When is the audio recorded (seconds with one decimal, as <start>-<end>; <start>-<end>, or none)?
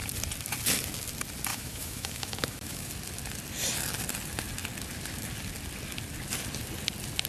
0.0-1.5; 2.9-7.3